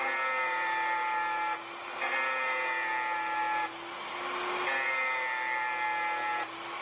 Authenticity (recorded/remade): recorded